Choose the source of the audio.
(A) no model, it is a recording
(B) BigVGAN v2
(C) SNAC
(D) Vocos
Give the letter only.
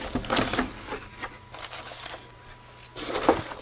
A